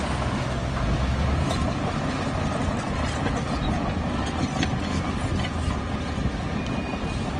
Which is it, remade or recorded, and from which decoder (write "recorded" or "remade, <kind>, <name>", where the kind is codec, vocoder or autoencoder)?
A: recorded